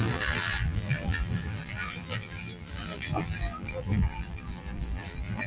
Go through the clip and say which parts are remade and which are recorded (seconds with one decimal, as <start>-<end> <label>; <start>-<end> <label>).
0.0-5.5 remade